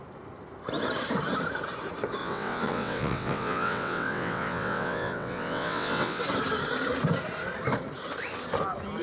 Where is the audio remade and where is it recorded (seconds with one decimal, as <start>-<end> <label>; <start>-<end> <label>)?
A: 0.0-2.2 recorded; 2.2-6.2 remade; 6.2-9.0 recorded